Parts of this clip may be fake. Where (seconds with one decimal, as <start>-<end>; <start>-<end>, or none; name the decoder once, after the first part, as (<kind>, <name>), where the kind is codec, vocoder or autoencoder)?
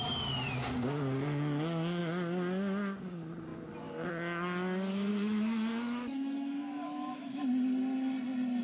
5.1-7.4 (autoencoder, DAC-VAE)